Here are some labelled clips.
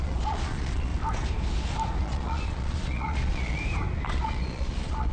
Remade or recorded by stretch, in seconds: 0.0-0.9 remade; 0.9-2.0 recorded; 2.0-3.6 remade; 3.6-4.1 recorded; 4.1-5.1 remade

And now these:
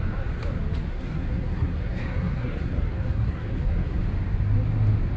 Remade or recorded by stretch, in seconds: 0.0-0.9 recorded; 0.9-4.0 remade; 4.0-5.2 recorded

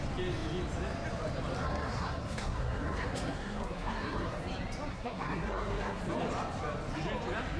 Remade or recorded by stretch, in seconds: 0.0-1.6 recorded; 1.6-4.4 remade; 4.4-4.9 recorded; 4.9-6.0 remade; 6.0-7.6 recorded

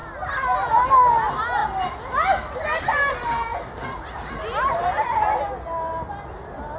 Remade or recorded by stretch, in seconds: 0.0-6.8 recorded